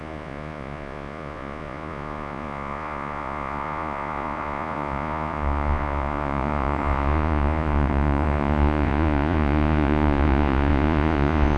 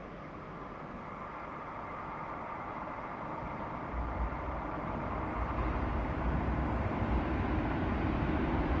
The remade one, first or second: first